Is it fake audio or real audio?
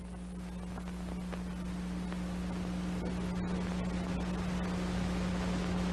real